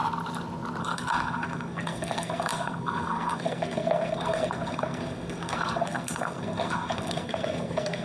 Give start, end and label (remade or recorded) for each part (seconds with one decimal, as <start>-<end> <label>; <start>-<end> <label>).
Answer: 0.0-0.8 recorded; 0.8-8.0 remade